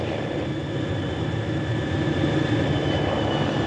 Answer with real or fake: fake